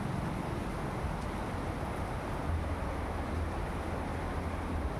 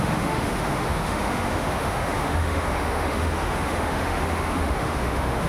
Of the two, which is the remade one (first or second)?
second